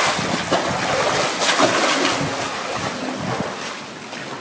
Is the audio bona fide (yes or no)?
yes